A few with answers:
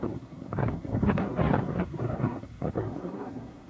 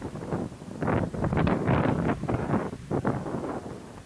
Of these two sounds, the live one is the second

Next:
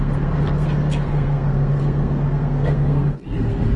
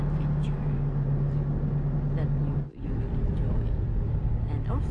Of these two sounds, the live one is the second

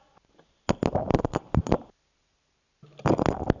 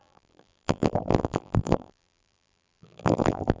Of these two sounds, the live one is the first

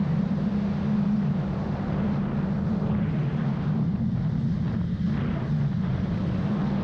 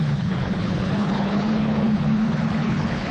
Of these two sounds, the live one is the first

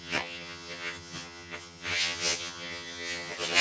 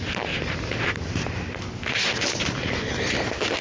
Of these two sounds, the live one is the second